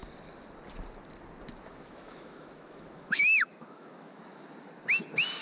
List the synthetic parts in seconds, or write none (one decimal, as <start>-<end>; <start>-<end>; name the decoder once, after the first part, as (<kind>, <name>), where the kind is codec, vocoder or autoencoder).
1.7-4.2 (autoencoder, DAC-VAE)